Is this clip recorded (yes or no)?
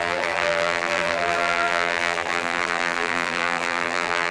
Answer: no